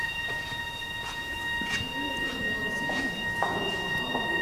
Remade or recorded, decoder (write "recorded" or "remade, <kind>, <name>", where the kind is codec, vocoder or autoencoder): remade, vocoder, Vocos